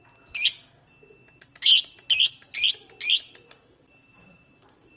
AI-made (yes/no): no